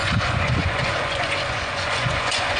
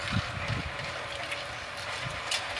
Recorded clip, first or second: second